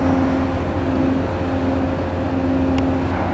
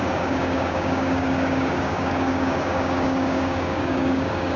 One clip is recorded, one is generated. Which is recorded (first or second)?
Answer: first